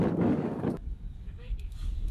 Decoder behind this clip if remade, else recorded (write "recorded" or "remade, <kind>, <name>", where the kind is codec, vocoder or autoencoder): remade, codec, DAC